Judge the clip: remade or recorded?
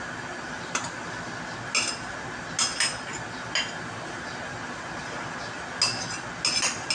recorded